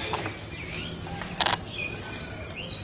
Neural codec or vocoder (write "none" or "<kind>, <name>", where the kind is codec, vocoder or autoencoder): none